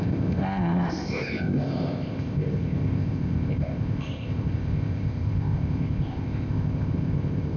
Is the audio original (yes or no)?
no